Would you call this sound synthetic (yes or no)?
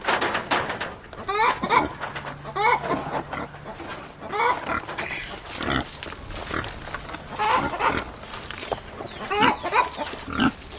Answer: no